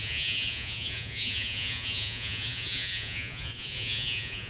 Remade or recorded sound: remade